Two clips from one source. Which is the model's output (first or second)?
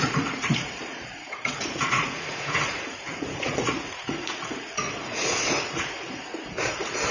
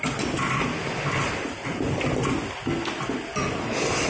first